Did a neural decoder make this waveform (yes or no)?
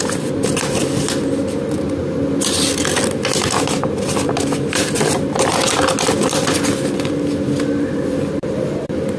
no